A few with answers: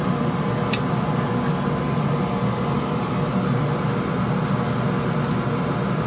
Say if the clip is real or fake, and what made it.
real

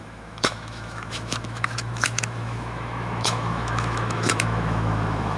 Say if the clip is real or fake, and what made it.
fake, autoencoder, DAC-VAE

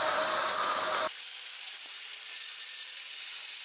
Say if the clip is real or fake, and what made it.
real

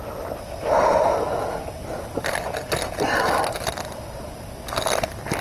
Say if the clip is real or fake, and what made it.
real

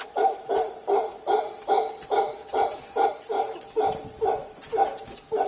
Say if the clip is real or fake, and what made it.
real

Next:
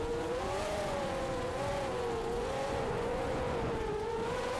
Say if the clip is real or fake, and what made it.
fake, vocoder, Vocos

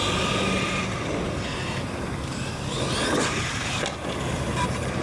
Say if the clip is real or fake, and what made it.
real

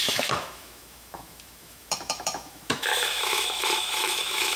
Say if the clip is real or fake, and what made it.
fake, autoencoder, DAC-VAE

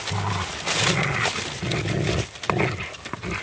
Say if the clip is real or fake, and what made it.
real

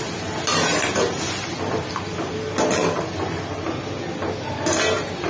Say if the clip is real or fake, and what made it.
real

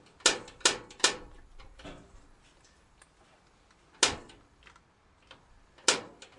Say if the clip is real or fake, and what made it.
real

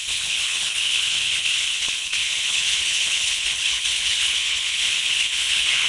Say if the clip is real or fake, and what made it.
fake, codec, HILCodec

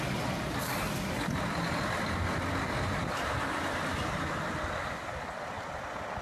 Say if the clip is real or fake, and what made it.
real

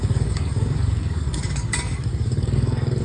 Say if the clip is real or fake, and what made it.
fake, codec, DAC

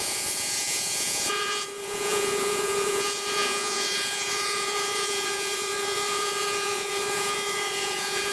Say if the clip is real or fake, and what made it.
fake, vocoder, Vocos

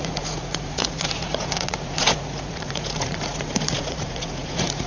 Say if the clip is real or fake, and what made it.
fake, vocoder, Vocos